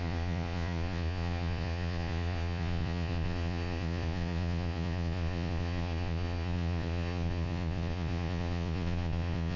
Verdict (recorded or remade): remade